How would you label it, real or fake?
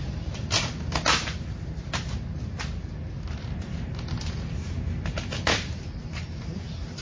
real